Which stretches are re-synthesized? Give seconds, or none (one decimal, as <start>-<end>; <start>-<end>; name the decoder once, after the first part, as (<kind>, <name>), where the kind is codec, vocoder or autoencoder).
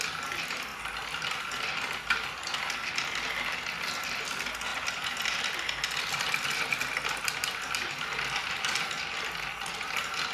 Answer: none